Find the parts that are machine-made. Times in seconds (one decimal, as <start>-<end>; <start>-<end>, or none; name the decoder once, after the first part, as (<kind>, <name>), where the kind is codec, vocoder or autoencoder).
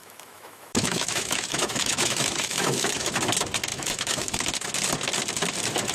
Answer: 0.0-3.1 (autoencoder, DAC-VAE); 3.7-4.4